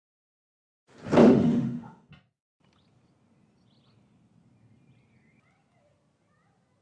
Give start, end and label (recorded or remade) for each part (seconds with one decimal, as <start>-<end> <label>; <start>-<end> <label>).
0.0-1.2 recorded; 1.2-2.1 remade; 2.1-6.8 recorded